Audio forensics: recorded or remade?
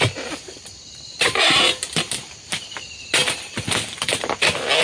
recorded